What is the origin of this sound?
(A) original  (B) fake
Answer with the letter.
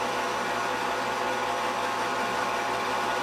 A